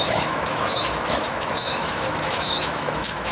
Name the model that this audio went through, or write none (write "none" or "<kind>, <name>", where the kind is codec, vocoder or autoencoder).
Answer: autoencoder, DAC-VAE